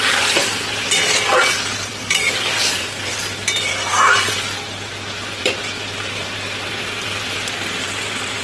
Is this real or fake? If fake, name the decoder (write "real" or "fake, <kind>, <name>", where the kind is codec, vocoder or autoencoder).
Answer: real